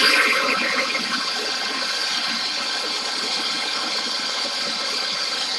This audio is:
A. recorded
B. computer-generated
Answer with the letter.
B